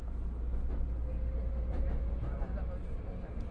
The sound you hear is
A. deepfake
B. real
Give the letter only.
B